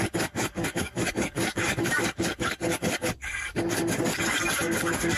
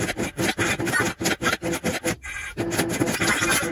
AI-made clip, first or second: first